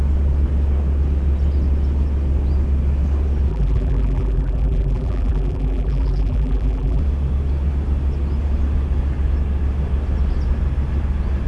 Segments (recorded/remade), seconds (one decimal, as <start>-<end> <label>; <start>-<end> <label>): 0.0-3.5 recorded; 3.5-7.0 remade; 7.0-11.5 recorded

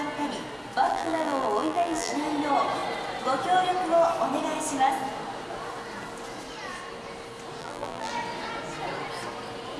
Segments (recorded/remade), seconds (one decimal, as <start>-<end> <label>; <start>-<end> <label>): 0.0-0.9 recorded; 0.9-2.1 remade; 2.1-7.6 recorded; 7.6-8.1 remade; 8.1-9.8 recorded